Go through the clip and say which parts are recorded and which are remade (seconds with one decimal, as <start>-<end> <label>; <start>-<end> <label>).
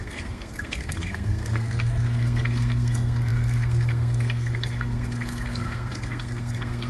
0.0-6.9 remade